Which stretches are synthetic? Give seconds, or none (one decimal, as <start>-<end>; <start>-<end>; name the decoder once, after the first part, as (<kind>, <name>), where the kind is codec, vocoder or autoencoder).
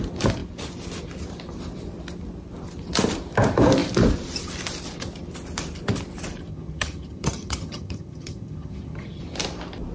6.5-9.2 (vocoder, HiFi-GAN)